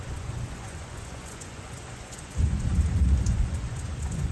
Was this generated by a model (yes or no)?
yes